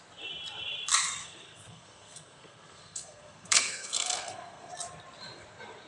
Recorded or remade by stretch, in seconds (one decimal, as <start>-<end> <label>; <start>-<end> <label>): 0.0-1.2 recorded; 1.2-4.7 remade; 4.7-5.9 recorded